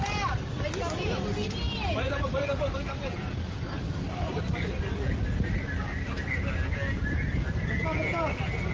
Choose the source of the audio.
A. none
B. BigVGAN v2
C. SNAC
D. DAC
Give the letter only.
A